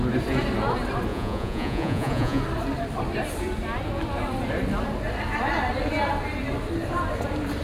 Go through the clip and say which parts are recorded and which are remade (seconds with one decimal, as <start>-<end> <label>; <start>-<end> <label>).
0.0-1.1 recorded; 1.1-2.4 remade; 2.4-7.6 recorded